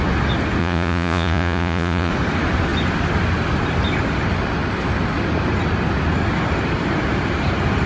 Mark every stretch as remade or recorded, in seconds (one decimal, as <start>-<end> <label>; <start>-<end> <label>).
0.0-0.6 recorded; 0.6-2.1 remade; 2.1-7.9 recorded